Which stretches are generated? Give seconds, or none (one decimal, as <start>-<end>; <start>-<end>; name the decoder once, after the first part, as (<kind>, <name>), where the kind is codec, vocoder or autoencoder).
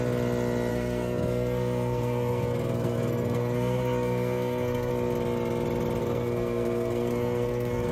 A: 0.7-4.9 (codec, SNAC); 6.0-7.9